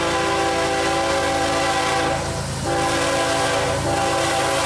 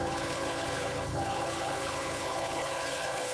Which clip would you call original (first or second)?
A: first